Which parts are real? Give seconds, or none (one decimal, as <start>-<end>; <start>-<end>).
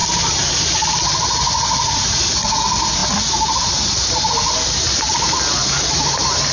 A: 0.0-6.5